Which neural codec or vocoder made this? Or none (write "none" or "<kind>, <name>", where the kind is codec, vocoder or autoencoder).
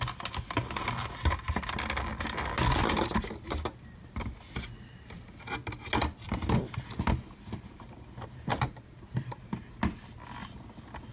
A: none